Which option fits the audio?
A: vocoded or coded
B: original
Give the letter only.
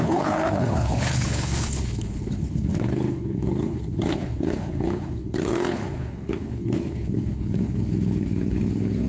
A